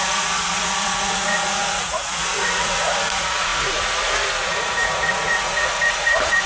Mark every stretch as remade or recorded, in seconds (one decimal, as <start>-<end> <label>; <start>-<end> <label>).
0.0-6.5 remade